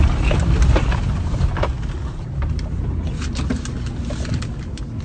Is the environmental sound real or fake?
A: real